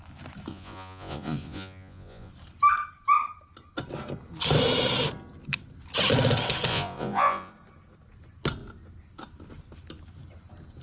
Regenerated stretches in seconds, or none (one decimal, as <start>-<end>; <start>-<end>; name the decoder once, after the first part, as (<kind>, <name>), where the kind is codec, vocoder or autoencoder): 0.5-2.3 (vocoder, Vocos); 6.7-7.5